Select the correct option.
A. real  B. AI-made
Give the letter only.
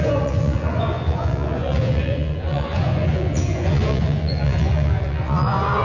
B